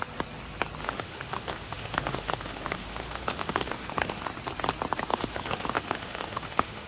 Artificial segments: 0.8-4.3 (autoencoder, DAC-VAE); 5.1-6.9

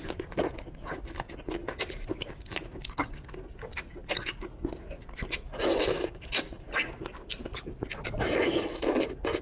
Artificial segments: none

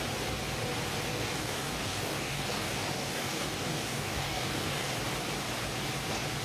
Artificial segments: 1.1-4.9 (codec, DAC)

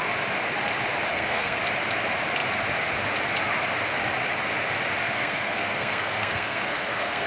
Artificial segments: 1.1-1.6 (codec, SNAC); 5.0-7.3

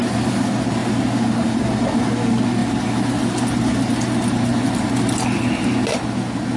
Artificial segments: none

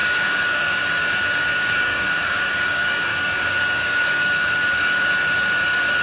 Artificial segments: 0.0-0.8 (codec, DAC); 1.5-5.1